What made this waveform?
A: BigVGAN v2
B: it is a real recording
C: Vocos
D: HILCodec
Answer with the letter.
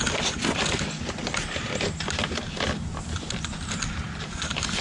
B